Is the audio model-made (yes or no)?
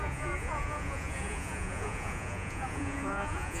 yes